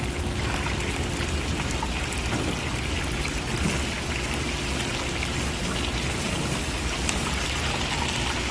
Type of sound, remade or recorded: recorded